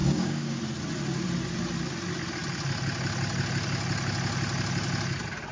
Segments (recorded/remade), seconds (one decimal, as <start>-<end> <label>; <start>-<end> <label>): 0.0-0.6 remade; 0.6-5.5 recorded